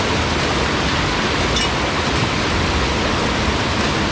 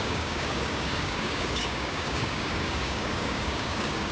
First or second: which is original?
first